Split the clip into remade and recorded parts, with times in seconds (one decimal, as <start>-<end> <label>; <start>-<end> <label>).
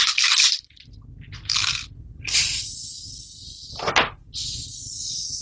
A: 0.0-5.4 recorded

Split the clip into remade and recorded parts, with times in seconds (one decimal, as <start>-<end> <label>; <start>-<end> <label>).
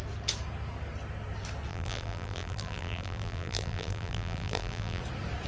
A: 0.0-1.7 recorded; 1.7-5.0 remade; 5.0-5.5 recorded